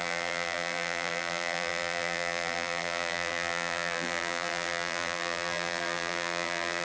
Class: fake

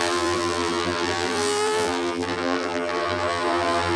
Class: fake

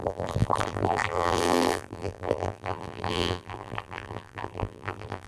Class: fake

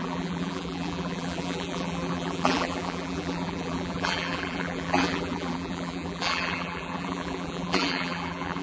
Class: fake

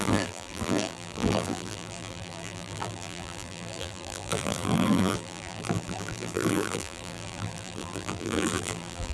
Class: fake